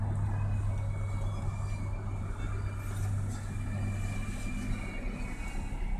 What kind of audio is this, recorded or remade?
recorded